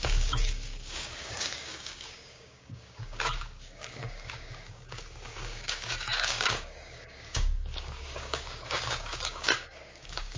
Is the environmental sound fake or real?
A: fake